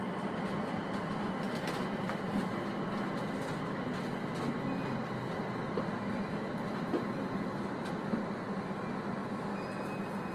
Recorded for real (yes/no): yes